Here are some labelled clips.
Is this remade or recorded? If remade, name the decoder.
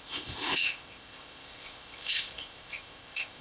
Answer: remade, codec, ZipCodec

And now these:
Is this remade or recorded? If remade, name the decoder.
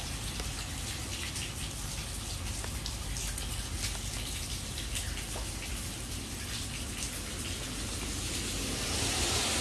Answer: recorded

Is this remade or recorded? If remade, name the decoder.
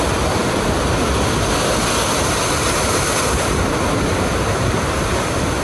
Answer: recorded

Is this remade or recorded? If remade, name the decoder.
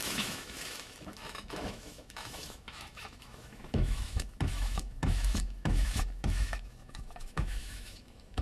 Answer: remade, autoencoder, DAC-VAE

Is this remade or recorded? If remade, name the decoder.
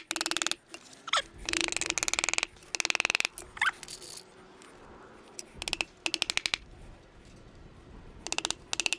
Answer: recorded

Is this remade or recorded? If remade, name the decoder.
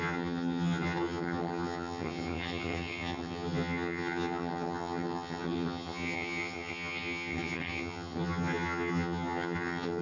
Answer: remade, vocoder, HiFi-GAN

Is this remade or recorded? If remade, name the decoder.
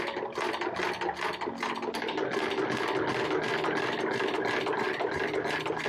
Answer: recorded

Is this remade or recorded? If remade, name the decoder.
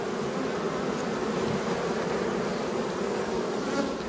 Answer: recorded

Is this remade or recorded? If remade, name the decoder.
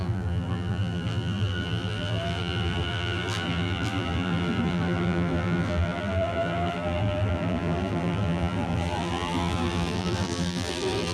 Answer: remade, vocoder, BigVGAN v2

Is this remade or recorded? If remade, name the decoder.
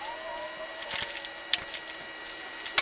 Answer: recorded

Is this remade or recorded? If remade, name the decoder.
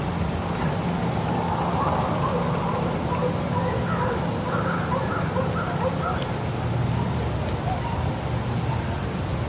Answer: recorded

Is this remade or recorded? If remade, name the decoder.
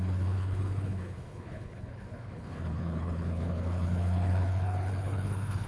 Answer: remade, codec, HILCodec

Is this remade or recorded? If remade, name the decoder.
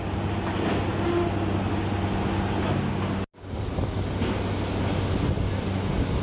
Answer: recorded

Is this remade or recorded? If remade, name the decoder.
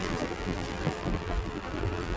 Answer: remade, vocoder, BigVGAN v2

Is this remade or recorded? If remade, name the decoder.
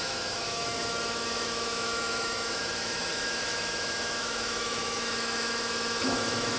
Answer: remade, autoencoder, DAC-VAE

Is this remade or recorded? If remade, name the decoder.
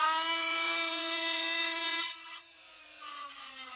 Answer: remade, vocoder, Vocos